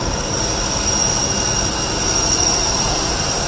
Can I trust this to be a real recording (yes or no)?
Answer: yes